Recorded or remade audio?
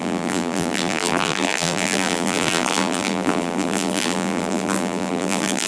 remade